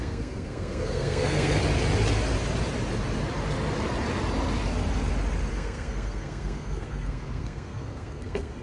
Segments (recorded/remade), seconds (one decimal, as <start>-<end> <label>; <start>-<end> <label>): 0.0-1.6 remade; 1.6-5.5 recorded; 5.5-8.6 remade